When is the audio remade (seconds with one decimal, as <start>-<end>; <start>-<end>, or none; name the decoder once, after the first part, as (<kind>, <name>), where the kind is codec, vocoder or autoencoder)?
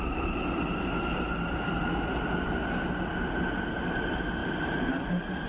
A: none